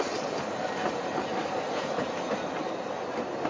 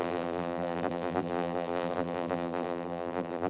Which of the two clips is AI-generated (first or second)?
second